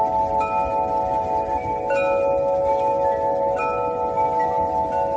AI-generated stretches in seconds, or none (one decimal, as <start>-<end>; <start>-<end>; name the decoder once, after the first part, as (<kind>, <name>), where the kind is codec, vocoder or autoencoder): none